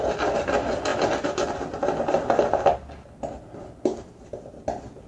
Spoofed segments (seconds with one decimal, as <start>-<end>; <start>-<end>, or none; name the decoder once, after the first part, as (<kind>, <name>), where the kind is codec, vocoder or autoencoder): none